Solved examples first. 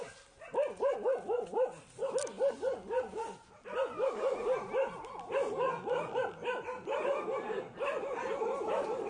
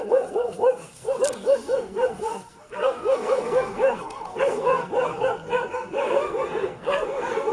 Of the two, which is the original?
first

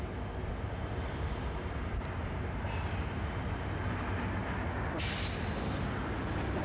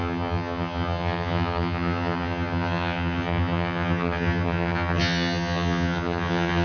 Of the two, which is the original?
first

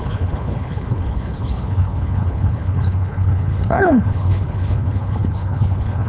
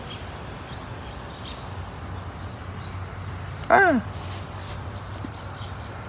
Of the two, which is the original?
second